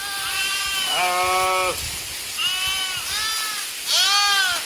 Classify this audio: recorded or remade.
recorded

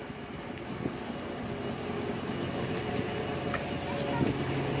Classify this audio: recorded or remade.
recorded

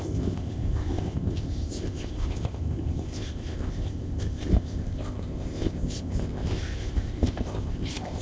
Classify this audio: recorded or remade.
remade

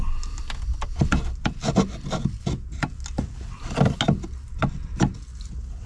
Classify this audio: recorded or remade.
recorded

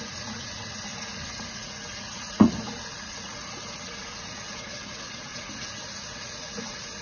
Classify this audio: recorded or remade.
remade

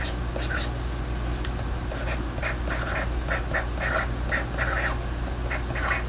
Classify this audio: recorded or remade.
recorded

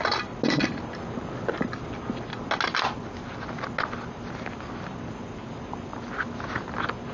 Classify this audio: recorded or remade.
recorded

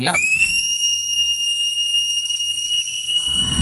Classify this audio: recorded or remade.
remade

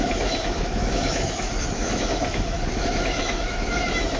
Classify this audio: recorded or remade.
remade